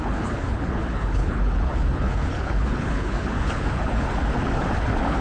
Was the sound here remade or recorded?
remade